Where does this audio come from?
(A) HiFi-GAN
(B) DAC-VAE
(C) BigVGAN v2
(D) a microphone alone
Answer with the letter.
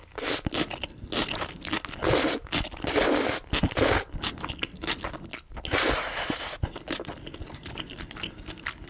D